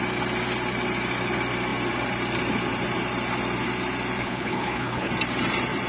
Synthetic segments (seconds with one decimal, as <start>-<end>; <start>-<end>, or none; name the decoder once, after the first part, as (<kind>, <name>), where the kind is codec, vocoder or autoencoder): 4.2-5.1 (codec, HILCodec)

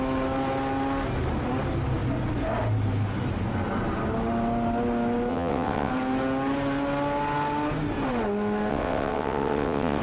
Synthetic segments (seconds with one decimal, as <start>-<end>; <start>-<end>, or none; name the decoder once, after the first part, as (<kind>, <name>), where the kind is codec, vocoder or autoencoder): 5.3-5.9 (vocoder, WaveNeXt); 8.7-10.0

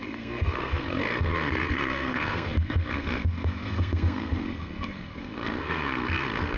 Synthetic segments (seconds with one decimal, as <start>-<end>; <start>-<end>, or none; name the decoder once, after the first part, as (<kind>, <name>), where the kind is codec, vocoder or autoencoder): 0.0-6.6 (codec, SNAC)

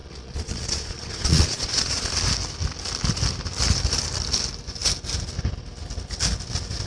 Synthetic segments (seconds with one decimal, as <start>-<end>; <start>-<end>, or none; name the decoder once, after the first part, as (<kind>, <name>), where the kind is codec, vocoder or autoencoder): 0.0-2.1 (vocoder, Vocos)

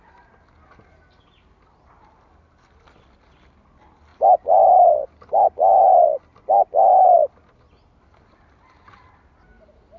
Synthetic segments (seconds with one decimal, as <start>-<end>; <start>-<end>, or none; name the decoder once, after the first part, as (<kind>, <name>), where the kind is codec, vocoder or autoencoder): none

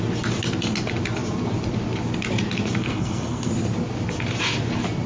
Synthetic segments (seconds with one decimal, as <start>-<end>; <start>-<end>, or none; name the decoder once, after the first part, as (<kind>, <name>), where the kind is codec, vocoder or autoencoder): 2.8-3.5 (codec, SNAC)

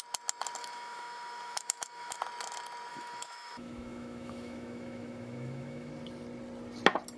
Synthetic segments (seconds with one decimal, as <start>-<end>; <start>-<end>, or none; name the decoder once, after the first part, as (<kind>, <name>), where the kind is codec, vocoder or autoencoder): 0.6-2.2 (autoencoder, DAC-VAE); 2.9-5.9

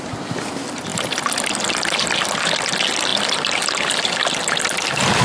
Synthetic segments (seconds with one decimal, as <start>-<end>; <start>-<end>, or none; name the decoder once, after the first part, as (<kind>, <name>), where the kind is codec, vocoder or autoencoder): none